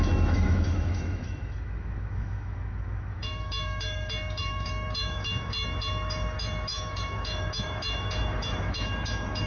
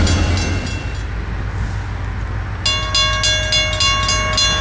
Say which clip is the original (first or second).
second